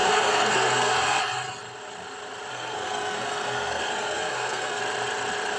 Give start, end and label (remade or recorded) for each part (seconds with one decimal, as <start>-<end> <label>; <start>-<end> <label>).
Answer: 0.0-1.2 remade; 1.2-2.5 recorded; 2.5-4.8 remade; 4.8-5.6 recorded

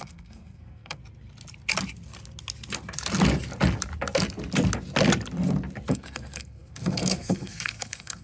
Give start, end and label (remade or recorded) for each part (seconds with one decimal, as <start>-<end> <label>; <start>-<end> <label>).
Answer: 0.0-1.0 remade; 1.0-5.9 recorded; 5.9-8.2 remade